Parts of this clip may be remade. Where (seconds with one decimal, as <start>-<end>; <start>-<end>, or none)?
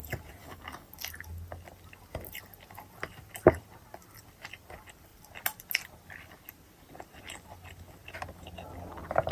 0.4-0.9